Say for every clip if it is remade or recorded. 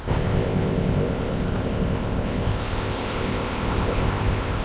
remade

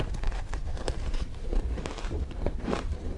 remade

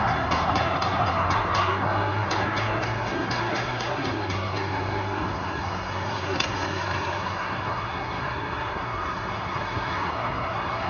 remade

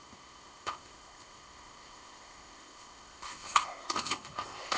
remade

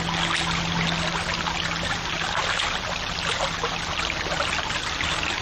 recorded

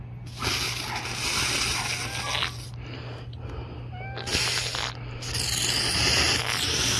recorded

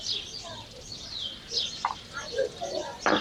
recorded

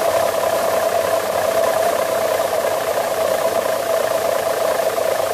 remade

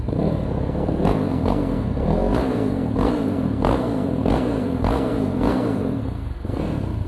remade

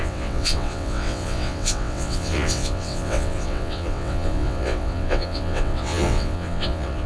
remade